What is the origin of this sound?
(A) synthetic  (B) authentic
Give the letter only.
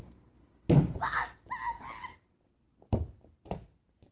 B